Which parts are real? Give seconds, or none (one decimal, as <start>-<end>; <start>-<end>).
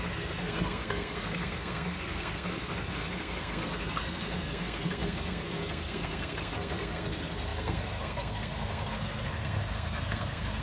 none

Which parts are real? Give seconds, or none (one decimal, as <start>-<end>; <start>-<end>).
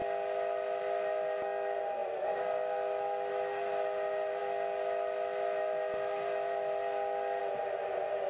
0.0-8.3